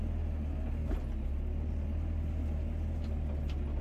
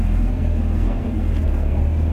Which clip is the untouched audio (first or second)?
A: first